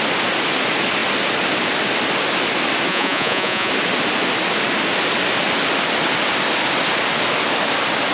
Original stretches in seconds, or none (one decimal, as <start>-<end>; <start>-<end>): 0.0-2.9; 3.7-8.1